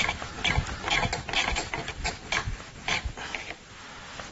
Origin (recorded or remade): remade